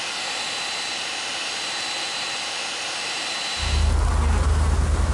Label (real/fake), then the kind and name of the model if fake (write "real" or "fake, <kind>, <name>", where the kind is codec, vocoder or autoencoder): real